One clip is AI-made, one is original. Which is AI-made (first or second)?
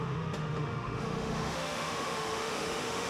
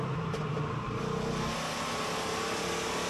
first